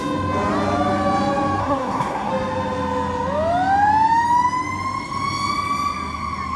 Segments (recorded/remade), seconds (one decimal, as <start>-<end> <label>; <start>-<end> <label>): 0.0-1.6 recorded; 1.6-2.3 remade; 2.3-6.6 recorded